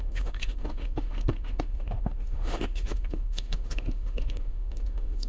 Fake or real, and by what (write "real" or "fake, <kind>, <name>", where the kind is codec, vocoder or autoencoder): fake, autoencoder, DAC-VAE